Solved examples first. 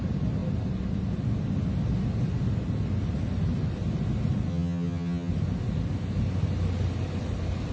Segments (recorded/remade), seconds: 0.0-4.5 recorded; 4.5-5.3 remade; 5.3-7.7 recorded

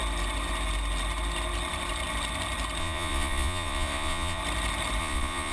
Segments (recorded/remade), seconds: 0.0-2.8 recorded; 2.8-4.4 remade; 4.4-5.0 recorded; 5.0-5.5 remade

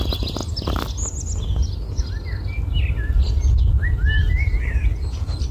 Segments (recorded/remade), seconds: 0.0-4.2 recorded; 4.2-4.7 remade; 4.7-5.5 recorded